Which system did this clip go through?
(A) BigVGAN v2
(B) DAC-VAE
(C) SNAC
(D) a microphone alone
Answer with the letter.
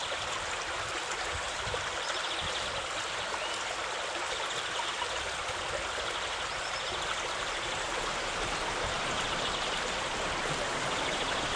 D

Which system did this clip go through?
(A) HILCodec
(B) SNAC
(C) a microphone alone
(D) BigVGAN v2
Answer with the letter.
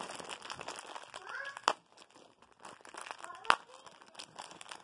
C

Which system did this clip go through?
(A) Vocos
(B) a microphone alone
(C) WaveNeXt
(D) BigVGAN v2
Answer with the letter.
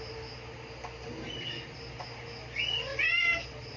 B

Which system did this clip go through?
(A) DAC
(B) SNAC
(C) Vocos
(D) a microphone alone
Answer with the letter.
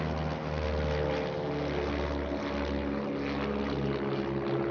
D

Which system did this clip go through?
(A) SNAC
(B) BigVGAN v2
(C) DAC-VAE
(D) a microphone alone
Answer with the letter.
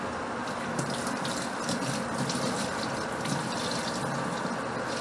D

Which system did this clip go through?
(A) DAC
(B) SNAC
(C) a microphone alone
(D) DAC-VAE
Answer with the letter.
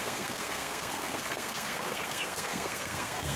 B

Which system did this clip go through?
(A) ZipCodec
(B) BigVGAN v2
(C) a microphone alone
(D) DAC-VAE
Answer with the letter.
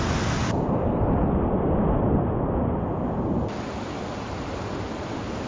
C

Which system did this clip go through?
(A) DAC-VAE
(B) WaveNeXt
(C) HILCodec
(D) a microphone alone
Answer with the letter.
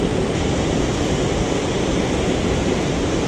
D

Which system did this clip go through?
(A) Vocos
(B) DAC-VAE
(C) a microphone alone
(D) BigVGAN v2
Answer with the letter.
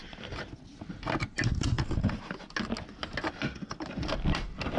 C